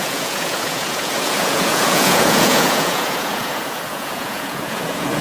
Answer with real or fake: fake